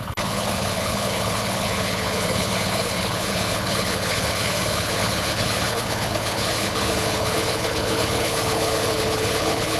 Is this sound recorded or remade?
remade